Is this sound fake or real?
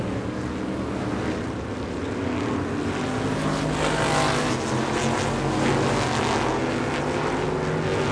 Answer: real